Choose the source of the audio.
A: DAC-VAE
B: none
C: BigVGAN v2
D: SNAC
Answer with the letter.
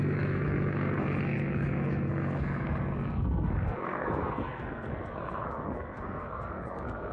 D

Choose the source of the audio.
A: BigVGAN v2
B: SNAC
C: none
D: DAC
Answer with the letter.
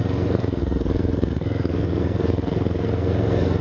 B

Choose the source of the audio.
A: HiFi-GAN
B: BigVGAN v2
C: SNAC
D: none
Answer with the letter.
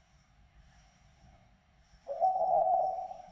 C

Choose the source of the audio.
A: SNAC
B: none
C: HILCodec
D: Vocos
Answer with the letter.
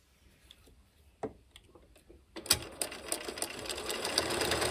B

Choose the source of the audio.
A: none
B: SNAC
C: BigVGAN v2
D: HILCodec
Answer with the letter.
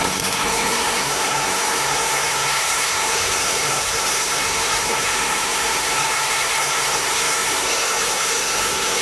B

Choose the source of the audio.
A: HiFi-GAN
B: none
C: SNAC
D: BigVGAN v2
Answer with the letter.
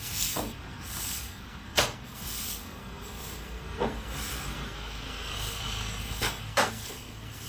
C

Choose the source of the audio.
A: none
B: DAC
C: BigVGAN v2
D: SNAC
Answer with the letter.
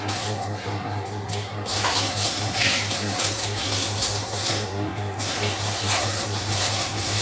D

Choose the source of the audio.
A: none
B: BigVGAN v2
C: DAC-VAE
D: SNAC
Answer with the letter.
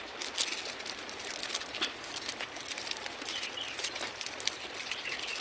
A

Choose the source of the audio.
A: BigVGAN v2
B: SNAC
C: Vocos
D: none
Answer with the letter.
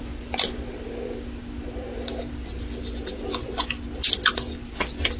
D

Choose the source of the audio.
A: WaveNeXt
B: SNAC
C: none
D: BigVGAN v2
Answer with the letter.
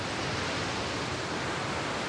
C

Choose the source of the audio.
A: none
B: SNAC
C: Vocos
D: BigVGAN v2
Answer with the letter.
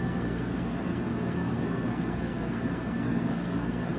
B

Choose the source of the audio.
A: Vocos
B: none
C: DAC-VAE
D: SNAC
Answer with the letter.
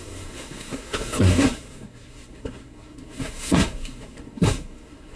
D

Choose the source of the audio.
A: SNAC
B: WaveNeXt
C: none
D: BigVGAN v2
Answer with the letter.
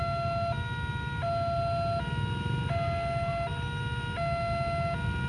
C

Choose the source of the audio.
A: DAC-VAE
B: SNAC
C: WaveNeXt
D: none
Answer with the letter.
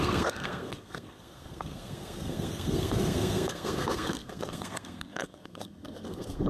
B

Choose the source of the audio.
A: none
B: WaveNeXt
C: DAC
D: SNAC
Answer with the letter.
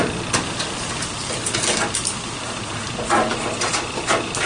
A